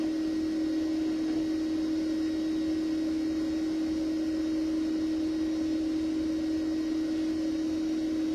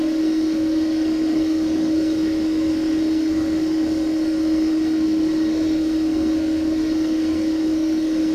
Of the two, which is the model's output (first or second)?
second